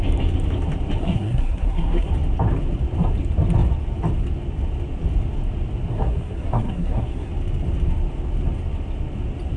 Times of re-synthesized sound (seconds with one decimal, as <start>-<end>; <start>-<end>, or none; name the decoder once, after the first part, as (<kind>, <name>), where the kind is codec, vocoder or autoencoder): 1.0-2.1 (codec, SNAC); 5.9-7.3